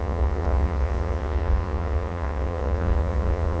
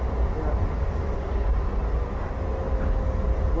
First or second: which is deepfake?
first